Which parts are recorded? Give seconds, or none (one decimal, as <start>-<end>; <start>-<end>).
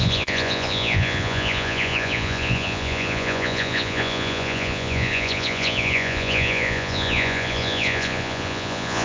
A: none